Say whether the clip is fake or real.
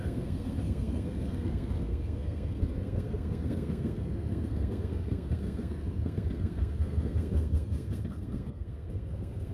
fake